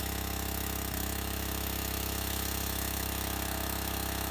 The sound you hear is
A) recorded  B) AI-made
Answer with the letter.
B